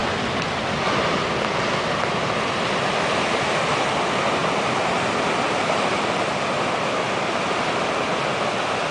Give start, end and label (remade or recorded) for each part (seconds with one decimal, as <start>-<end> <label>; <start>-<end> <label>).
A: 0.0-4.4 recorded; 4.4-6.6 remade; 6.6-8.9 recorded